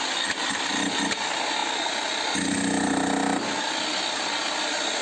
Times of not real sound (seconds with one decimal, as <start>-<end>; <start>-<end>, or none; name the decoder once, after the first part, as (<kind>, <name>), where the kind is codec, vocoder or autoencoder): none